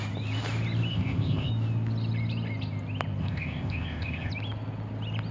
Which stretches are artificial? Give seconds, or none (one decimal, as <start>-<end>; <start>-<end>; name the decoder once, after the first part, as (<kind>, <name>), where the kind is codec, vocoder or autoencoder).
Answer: 0.9-1.5 (codec, ZipCodec); 3.2-4.3

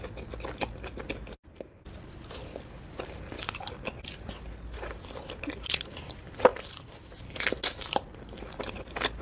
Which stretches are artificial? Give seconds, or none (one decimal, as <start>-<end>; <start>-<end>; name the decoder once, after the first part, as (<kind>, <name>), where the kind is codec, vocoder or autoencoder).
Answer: none

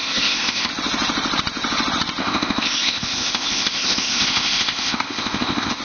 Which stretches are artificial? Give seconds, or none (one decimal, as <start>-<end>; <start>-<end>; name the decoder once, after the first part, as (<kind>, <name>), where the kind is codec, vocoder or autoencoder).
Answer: 0.0-0.7 (codec, ZipCodec); 2.2-5.8

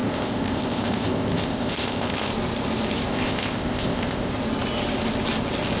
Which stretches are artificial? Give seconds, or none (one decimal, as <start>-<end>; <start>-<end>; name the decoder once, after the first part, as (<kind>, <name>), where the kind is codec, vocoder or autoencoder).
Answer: 0.0-2.3 (codec, ZipCodec); 3.1-4.3

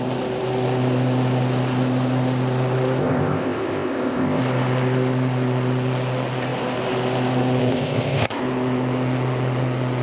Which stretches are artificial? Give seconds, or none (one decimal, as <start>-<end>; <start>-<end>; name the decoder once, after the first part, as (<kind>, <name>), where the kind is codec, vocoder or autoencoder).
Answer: 3.0-4.4 (codec, ZipCodec); 7.6-8.4